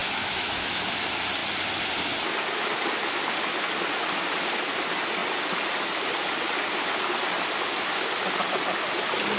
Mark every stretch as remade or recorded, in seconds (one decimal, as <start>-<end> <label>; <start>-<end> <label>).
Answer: 0.0-0.8 remade; 0.8-9.4 recorded